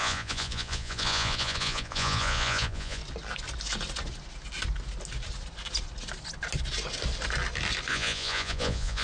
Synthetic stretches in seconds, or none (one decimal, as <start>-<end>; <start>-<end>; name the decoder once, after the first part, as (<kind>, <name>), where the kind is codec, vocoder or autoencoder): 0.0-3.0 (vocoder, Vocos); 7.9-9.0